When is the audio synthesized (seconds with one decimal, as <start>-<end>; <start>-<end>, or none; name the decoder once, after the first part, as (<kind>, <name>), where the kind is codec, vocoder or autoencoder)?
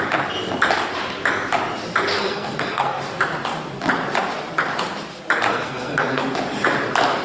2.2-3.0 (codec, SNAC); 5.5-6.2